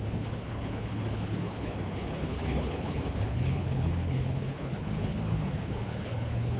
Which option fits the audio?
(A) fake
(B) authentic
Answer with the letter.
A